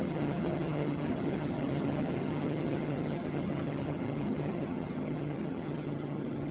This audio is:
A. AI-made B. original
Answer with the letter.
A